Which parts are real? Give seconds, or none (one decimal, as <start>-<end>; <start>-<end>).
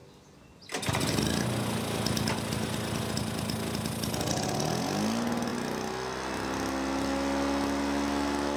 0.0-8.6